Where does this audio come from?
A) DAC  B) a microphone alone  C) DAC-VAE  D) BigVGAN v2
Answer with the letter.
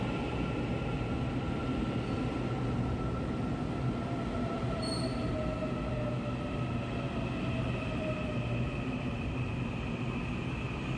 B